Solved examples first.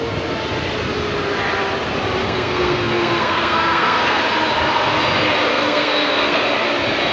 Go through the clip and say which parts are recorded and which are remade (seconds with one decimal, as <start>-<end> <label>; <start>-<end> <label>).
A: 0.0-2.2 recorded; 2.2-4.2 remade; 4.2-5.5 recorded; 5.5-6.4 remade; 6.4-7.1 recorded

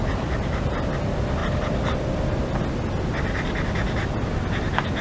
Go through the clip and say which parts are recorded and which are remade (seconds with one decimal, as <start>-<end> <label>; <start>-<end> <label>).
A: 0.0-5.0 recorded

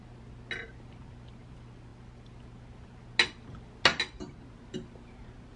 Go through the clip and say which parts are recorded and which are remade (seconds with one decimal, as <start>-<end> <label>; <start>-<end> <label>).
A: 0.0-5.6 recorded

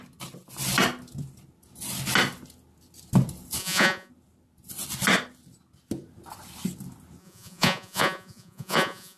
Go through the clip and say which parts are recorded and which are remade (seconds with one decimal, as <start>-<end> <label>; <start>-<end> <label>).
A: 0.0-3.6 recorded; 3.6-4.1 remade; 4.1-7.2 recorded; 7.2-9.2 remade

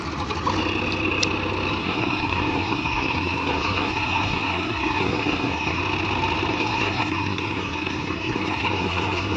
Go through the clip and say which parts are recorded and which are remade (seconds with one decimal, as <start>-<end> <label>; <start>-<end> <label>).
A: 0.0-1.8 recorded; 1.8-5.8 remade; 5.8-6.5 recorded; 6.5-9.4 remade

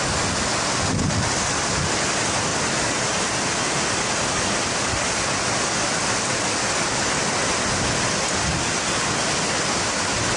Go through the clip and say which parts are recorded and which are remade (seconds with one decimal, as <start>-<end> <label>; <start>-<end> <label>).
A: 0.0-10.4 recorded